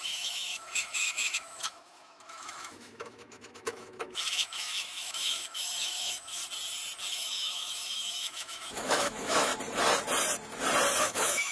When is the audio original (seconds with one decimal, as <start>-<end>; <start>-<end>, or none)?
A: 6.4-7.1; 9.5-11.0